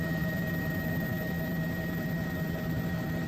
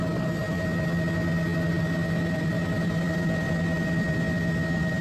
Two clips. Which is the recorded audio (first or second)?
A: second